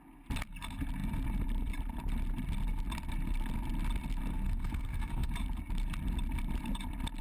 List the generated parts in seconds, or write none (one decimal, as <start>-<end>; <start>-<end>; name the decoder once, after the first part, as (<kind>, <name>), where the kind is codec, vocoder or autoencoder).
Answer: 4.3-5.3 (codec, SNAC)

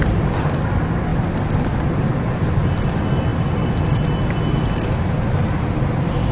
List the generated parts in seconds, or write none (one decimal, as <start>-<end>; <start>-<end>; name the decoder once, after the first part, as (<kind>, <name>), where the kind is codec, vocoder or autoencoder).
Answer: none

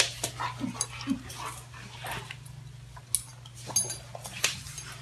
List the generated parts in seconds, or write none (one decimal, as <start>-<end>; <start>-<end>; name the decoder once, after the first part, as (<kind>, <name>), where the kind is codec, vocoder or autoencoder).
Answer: none

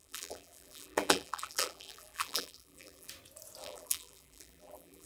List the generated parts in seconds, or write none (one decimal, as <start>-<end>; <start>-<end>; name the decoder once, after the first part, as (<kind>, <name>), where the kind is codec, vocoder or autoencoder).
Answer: 0.0-3.1 (vocoder, BigVGAN v2); 3.6-5.1